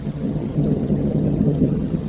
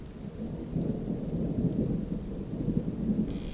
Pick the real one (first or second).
second